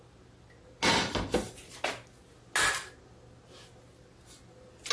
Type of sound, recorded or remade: recorded